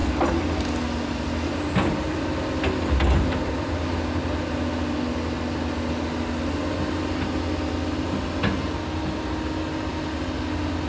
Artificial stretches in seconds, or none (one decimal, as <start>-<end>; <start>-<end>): none